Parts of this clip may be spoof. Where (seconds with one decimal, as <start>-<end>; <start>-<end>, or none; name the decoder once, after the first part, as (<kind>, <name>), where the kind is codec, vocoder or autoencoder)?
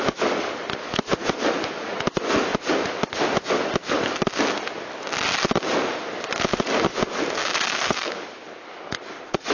7.4-8.2 (codec, DAC)